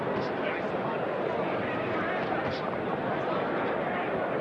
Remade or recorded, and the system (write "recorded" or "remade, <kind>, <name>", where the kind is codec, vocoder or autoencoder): recorded